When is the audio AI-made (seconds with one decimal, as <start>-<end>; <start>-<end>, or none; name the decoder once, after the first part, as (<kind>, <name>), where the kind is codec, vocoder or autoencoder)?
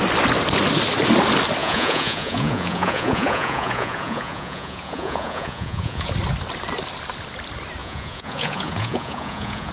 1.6-6.1 (vocoder, Vocos); 7.8-9.7